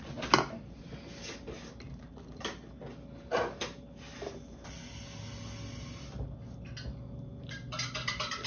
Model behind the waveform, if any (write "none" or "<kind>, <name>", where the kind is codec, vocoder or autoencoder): none